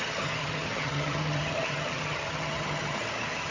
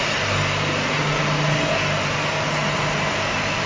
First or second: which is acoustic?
second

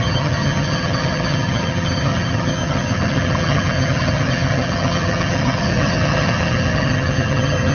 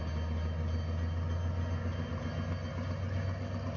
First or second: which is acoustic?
second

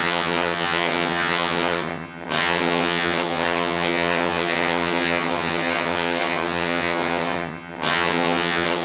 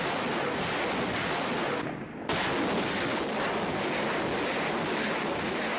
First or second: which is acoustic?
second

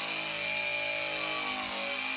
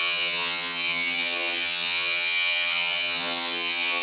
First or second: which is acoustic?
first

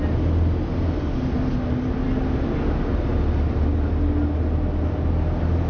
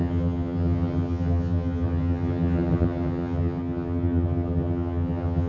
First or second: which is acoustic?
first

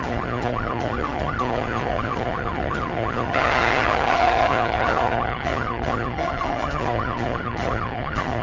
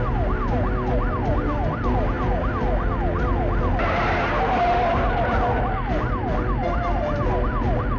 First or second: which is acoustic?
second